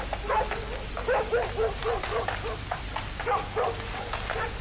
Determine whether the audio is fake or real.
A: real